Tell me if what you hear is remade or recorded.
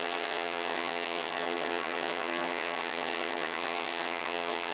remade